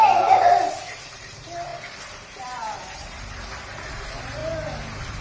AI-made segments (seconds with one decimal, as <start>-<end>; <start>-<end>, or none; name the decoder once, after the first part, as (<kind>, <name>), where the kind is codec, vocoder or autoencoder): 0.0-4.4 (vocoder, BigVGAN v2)